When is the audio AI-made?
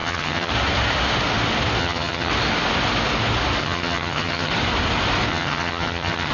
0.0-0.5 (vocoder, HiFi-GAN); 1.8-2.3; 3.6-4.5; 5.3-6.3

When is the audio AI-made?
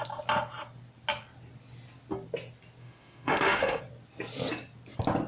2.8-3.8 (autoencoder, DAC-VAE)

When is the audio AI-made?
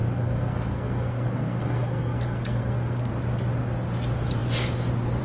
0.0-3.1 (codec, SNAC)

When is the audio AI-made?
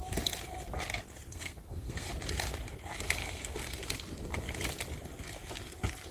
1.3-2.1 (codec, SNAC); 3.2-3.8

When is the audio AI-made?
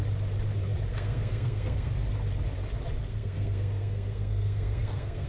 0.9-1.9 (codec, SNAC); 3.1-5.3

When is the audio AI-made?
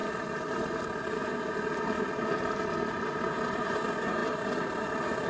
none